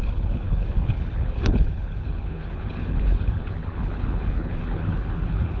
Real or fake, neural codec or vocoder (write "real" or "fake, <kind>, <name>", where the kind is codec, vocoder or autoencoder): fake, codec, HILCodec